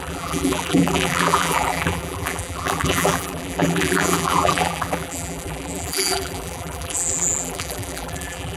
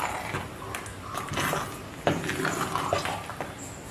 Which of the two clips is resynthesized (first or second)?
first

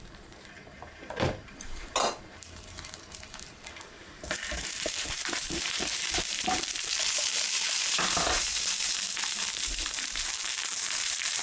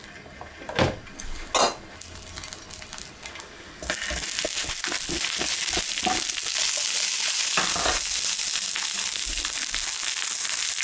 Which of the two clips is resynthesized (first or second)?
first